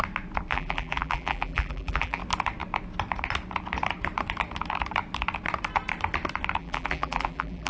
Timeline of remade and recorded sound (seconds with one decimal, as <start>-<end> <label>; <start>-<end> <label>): 0.0-0.5 recorded; 0.5-2.2 remade; 2.2-6.6 recorded; 6.6-7.7 remade